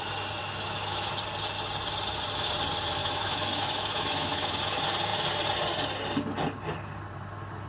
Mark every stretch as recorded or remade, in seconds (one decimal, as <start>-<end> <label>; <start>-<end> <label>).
0.0-0.4 recorded; 0.4-1.1 remade; 1.1-3.0 recorded; 3.0-4.6 remade; 4.6-7.7 recorded